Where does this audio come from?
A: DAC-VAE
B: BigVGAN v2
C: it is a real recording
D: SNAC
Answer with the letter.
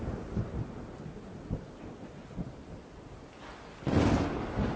C